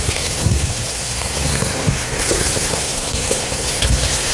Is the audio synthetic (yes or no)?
yes